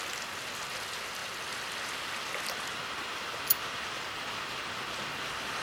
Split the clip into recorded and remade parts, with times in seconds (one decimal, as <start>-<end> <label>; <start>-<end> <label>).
0.0-5.6 recorded